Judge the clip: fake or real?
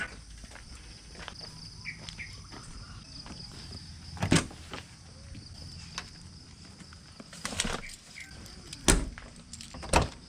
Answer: real